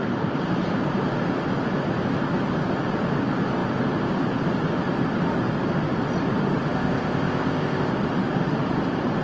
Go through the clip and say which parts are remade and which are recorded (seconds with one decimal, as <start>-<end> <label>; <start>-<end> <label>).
0.0-6.7 recorded; 6.7-7.9 remade; 7.9-9.2 recorded